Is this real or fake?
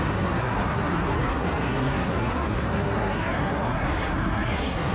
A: fake